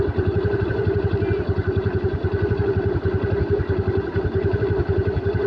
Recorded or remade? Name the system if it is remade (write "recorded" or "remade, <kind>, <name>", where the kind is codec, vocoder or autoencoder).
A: recorded